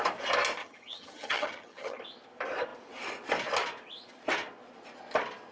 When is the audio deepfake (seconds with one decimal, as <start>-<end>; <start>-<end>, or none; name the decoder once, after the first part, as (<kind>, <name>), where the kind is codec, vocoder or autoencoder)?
0.6-2.0 (vocoder, HiFi-GAN)